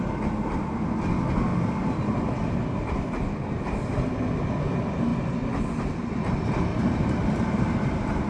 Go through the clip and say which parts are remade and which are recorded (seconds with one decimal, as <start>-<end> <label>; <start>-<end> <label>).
0.0-6.7 recorded; 6.7-8.3 remade